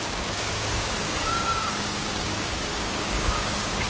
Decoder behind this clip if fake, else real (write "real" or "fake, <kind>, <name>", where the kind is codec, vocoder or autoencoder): fake, codec, DAC